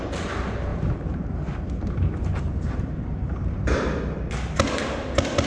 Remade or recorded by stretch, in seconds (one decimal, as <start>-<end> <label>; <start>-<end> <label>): 0.0-0.7 recorded; 0.7-4.0 remade; 4.0-5.5 recorded